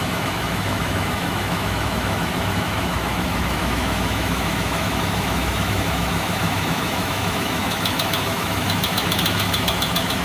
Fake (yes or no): yes